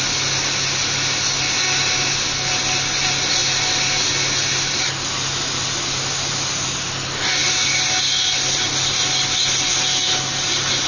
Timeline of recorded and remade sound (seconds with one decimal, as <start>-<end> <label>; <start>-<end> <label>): 0.0-10.9 recorded